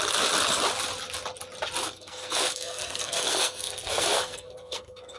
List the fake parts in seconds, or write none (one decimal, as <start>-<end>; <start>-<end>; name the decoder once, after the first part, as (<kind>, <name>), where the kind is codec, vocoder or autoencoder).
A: 1.8-5.2 (codec, SNAC)